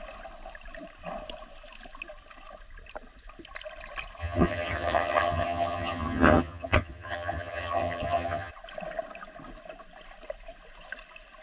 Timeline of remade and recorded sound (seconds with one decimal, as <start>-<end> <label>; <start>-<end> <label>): 0.0-4.2 recorded; 4.2-8.5 remade; 8.5-11.4 recorded